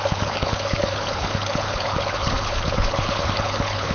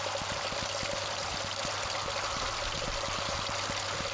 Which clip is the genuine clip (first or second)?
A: second